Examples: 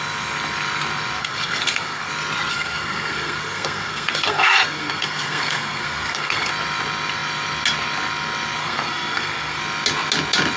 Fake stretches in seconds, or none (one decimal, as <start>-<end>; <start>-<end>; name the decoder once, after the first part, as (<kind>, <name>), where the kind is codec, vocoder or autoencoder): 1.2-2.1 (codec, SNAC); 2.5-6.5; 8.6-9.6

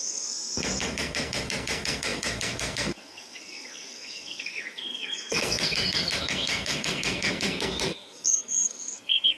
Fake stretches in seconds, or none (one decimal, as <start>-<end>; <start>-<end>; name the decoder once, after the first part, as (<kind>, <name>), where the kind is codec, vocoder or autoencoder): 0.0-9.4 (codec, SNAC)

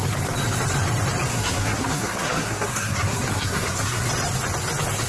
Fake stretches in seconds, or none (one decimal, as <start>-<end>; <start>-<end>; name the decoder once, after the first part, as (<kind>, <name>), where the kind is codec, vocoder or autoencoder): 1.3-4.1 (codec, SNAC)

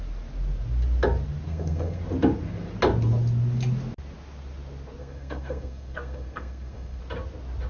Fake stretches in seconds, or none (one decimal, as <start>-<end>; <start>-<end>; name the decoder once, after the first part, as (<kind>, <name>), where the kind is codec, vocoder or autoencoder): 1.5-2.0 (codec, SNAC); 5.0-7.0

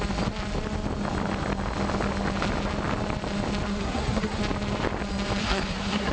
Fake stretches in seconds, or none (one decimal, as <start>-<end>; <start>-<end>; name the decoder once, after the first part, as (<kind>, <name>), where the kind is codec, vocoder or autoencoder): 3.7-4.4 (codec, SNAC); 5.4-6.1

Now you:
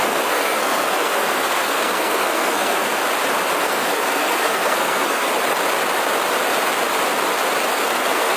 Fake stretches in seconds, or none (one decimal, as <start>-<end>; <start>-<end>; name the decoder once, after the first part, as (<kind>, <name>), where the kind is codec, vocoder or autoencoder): 0.0-3.0 (codec, SNAC); 3.6-5.3; 7.7-8.4

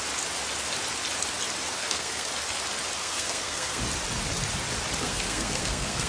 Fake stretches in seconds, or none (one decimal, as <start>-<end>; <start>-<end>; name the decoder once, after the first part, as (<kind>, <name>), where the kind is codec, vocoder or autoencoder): 1.8-2.3 (codec, SNAC); 3.0-3.8; 5.0-6.1